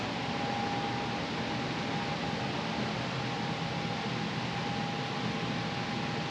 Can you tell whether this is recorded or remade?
recorded